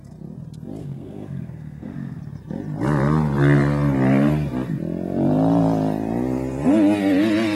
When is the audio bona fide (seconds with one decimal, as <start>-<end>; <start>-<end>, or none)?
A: 0.0-0.8; 2.2-7.5